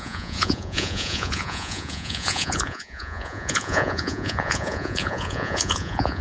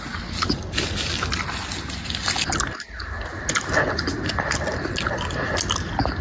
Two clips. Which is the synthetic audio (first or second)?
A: first